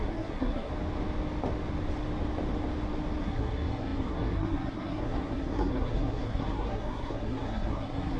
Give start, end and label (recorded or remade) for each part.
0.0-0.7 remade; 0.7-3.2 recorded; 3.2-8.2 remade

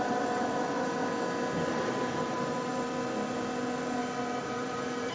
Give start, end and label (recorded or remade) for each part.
0.0-1.0 remade; 1.0-1.7 recorded; 1.7-2.7 remade; 2.7-4.4 recorded; 4.4-5.1 remade

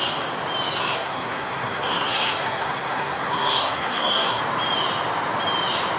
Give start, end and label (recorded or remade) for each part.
0.0-0.8 recorded; 0.8-4.4 remade; 4.4-6.0 recorded

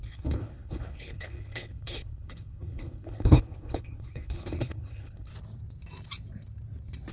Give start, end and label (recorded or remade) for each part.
0.0-5.3 remade; 5.3-7.1 recorded